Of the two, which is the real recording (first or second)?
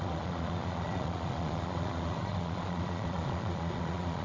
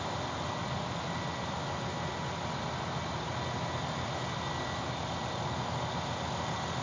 second